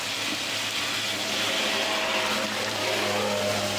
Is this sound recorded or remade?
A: recorded